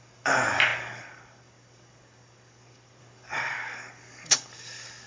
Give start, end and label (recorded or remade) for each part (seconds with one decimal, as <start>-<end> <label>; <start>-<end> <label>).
0.0-5.1 remade